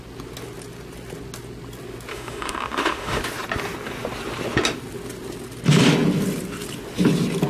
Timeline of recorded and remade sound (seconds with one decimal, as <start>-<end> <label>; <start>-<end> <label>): 0.0-2.1 recorded; 2.1-3.2 remade; 3.2-7.5 recorded